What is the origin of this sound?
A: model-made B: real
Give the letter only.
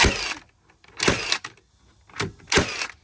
B